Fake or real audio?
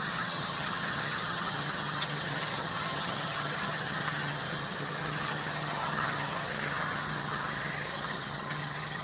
fake